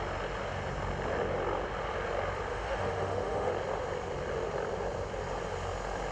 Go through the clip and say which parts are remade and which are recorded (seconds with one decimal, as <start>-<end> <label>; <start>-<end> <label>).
0.0-2.5 recorded; 2.5-3.5 remade; 3.5-6.1 recorded